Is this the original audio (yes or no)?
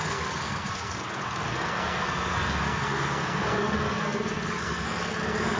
no